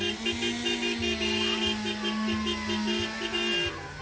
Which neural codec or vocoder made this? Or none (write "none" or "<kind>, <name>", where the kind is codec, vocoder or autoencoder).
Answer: none